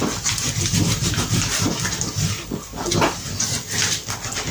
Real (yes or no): yes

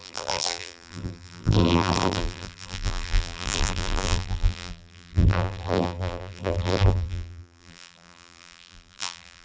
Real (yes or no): no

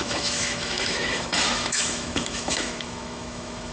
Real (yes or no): no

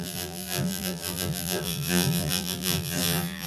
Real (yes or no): no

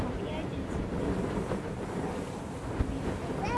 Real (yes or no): yes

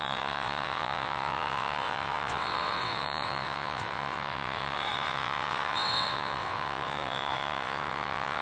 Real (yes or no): no